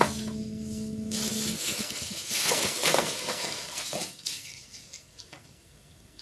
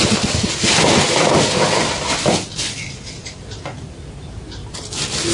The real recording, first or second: second